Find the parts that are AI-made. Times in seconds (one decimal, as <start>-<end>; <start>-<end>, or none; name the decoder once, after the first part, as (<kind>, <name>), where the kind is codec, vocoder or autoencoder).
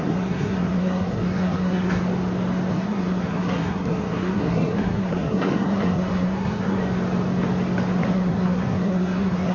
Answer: 0.0-2.0 (codec, SNAC); 2.7-6.8; 8.0-9.5